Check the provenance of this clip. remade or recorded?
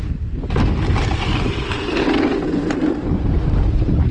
recorded